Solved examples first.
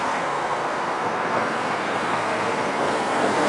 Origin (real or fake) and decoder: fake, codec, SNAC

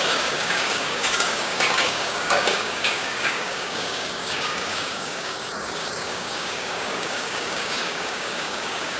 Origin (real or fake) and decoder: fake, codec, DAC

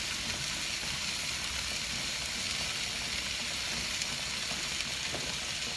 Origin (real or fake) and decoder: real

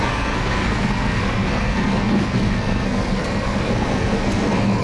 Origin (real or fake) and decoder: fake, codec, SNAC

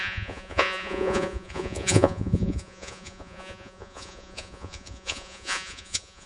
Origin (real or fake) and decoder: fake, vocoder, Vocos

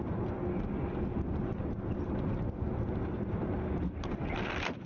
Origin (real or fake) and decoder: real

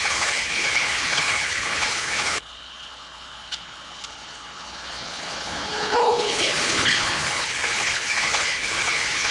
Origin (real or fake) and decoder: fake, codec, HILCodec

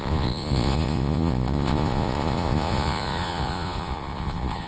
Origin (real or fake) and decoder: fake, vocoder, Vocos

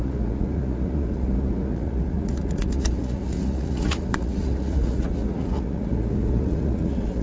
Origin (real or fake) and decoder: fake, vocoder, Vocos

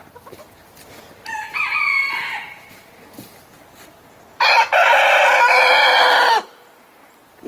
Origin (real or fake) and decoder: real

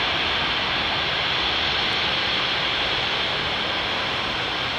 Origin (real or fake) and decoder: fake, vocoder, BigVGAN v2